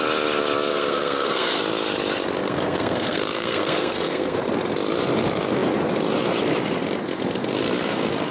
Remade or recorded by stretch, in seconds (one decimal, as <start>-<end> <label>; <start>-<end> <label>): 0.0-0.7 recorded; 0.7-1.6 remade; 1.6-2.4 recorded; 2.4-4.4 remade; 4.4-8.3 recorded

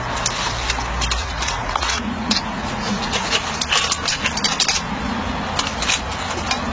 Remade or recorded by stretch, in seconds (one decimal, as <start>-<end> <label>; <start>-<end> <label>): 0.0-1.2 recorded; 1.2-3.4 remade; 3.4-6.7 recorded